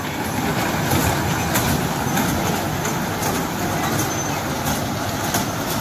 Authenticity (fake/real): real